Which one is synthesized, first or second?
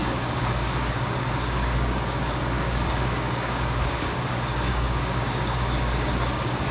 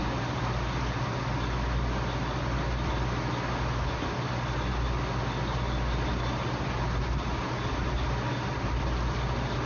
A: first